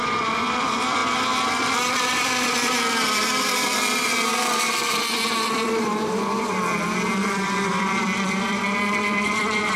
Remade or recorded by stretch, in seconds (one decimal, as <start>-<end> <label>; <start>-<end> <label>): 0.0-9.8 remade